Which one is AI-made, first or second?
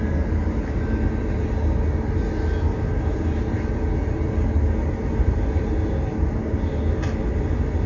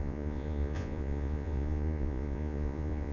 second